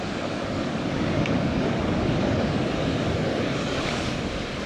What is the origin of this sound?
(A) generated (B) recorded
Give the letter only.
A